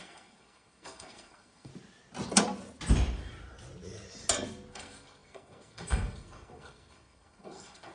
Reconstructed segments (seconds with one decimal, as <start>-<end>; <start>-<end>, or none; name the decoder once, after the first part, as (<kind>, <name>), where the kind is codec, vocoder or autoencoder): 0.0-1.7 (codec, SNAC); 4.7-7.9